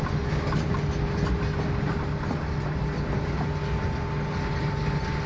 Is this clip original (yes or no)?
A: yes